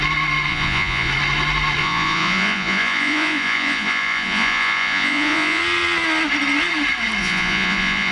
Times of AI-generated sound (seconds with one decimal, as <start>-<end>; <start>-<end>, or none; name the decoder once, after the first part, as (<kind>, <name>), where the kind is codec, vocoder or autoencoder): 0.5-1.1 (vocoder, Vocos); 1.8-5.6; 7.2-8.1